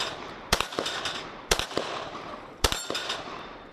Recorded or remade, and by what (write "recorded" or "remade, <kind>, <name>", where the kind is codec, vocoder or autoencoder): remade, vocoder, BigVGAN v2